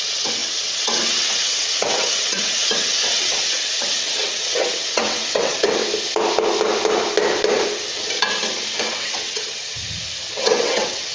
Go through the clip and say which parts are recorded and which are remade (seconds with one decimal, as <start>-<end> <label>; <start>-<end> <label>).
0.0-5.8 remade; 5.8-8.8 recorded; 8.8-9.8 remade; 9.8-10.3 recorded; 10.3-11.1 remade